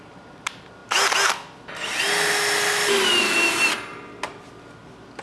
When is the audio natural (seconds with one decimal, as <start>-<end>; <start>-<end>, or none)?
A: 0.0-5.2